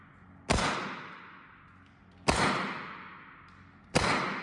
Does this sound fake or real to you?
real